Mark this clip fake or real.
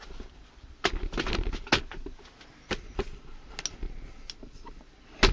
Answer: real